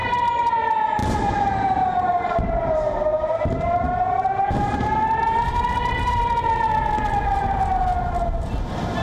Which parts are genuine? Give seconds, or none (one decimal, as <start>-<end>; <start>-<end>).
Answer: 0.5-1.0; 6.2-9.0

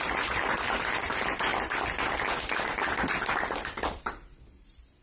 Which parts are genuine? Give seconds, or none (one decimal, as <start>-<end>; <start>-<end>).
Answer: 1.5-3.4